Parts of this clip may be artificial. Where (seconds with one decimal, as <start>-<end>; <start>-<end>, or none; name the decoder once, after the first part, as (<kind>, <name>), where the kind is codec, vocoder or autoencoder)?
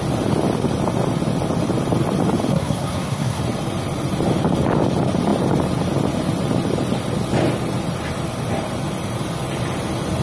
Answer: 2.5-3.4 (codec, SNAC)